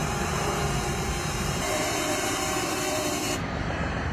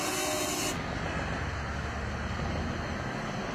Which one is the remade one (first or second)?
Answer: first